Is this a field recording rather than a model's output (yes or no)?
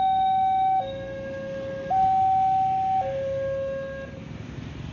yes